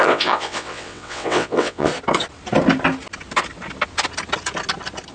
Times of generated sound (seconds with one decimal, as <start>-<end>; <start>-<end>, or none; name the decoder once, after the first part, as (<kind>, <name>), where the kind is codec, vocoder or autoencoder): 0.0-1.9 (vocoder, WaveNeXt)